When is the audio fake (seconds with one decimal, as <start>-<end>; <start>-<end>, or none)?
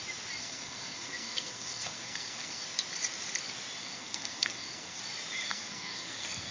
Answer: 0.4-2.6; 3.8-5.0; 5.5-6.5